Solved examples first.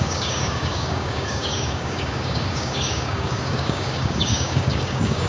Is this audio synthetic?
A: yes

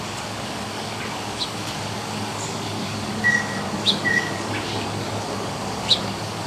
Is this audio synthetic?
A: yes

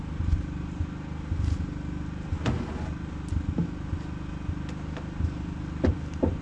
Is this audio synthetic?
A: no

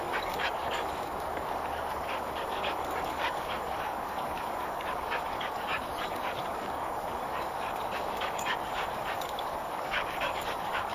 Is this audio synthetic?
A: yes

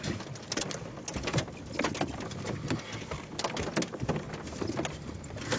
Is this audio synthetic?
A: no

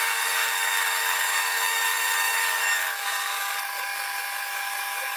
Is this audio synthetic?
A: yes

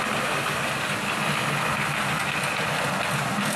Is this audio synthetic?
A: no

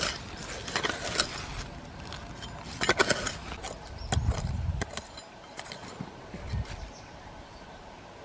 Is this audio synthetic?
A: no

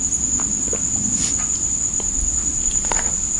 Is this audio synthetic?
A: no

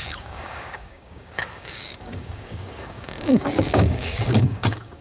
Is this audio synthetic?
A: yes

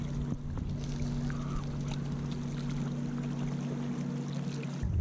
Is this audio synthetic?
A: no